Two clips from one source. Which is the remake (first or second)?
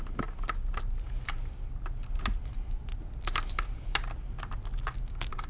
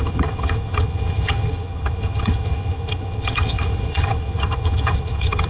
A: second